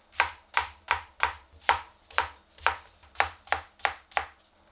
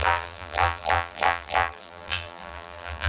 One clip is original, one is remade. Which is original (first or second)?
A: first